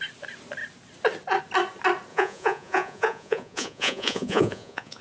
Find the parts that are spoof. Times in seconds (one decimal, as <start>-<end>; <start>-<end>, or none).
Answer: 2.1-5.0